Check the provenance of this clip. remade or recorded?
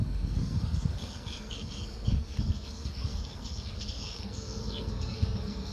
remade